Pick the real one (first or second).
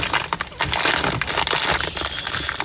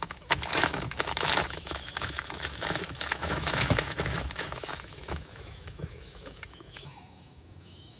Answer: first